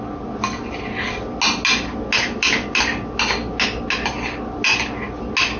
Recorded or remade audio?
recorded